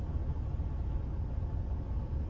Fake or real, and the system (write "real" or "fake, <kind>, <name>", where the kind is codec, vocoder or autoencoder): real